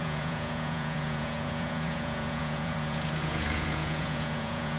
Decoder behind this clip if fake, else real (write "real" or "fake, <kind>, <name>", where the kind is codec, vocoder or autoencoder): fake, vocoder, Vocos